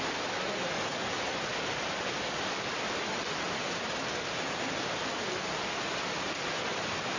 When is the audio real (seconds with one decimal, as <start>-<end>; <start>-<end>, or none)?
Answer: 0.0-7.2